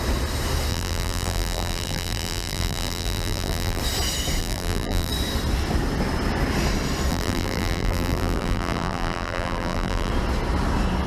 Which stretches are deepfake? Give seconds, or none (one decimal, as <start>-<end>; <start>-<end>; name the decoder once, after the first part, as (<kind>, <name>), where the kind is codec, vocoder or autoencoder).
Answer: 0.7-3.8 (vocoder, BigVGAN v2); 4.4-5.1; 7.1-10.1